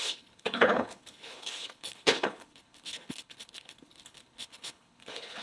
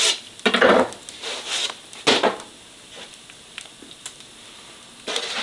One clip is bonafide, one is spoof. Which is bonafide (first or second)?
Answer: second